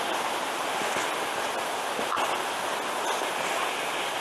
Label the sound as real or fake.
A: real